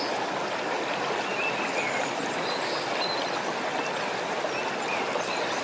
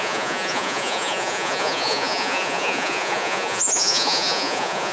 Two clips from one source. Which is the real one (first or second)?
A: first